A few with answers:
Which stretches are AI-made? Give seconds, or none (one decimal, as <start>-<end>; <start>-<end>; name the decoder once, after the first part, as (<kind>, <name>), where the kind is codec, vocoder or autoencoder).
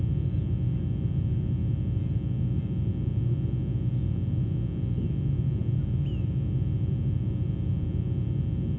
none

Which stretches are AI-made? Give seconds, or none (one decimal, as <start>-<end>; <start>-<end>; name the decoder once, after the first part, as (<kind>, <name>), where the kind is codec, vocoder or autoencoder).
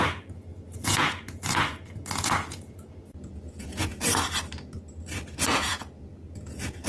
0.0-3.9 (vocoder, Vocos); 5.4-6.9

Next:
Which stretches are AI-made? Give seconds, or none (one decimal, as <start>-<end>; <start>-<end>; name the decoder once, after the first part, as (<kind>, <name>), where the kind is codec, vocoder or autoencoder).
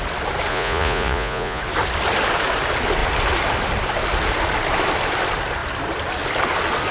0.5-1.6 (vocoder, Vocos)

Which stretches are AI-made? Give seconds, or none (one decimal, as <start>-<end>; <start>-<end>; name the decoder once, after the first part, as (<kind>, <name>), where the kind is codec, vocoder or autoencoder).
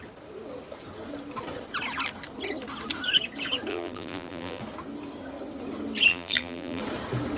3.7-4.6 (vocoder, BigVGAN v2); 6.1-6.8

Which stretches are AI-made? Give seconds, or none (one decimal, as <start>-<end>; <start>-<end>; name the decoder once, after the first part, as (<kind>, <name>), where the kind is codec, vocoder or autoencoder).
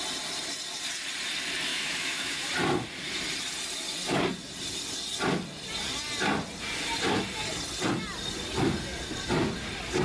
1.7-2.5 (autoencoder, DAC-VAE)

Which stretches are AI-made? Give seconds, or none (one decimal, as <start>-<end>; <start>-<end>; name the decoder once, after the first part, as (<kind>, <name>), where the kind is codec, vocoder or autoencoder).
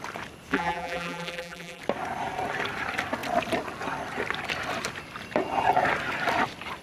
0.5-1.8 (vocoder, BigVGAN v2)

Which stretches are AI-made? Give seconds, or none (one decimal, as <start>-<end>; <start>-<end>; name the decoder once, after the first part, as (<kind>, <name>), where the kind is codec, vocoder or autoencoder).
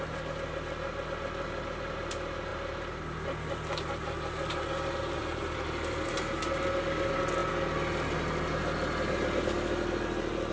none